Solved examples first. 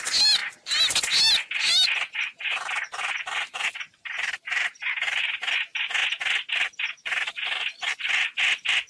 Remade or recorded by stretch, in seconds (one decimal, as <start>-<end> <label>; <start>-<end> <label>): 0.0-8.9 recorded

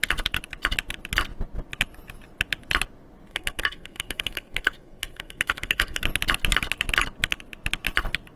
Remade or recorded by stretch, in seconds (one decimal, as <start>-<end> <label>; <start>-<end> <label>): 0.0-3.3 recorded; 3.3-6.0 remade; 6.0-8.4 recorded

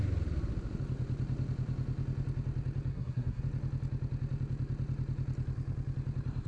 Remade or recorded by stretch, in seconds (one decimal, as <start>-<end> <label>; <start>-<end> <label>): 0.0-2.9 recorded; 2.9-3.4 remade; 3.4-6.5 recorded

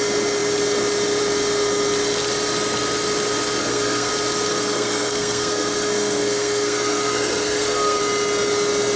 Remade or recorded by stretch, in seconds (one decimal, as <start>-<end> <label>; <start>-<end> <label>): 0.0-3.6 recorded; 3.6-4.1 remade; 4.1-4.5 recorded; 4.5-8.0 remade; 8.0-9.0 recorded